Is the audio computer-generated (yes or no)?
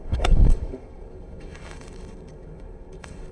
yes